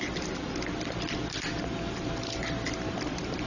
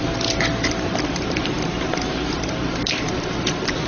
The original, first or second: first